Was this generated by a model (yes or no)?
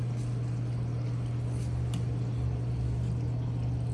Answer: no